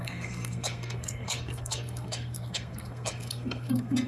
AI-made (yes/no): yes